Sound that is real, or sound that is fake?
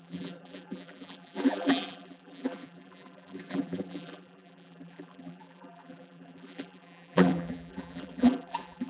fake